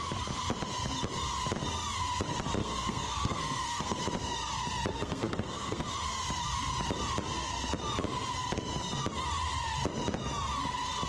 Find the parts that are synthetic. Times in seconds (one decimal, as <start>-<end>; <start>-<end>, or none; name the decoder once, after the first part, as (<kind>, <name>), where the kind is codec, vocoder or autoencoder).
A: 2.6-4.0 (codec, SNAC); 4.9-5.8